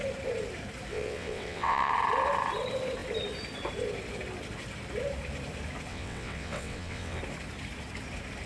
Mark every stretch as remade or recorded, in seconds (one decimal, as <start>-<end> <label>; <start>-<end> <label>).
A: 0.0-0.9 recorded; 0.9-1.9 remade; 1.9-5.9 recorded; 5.9-7.2 remade; 7.2-8.5 recorded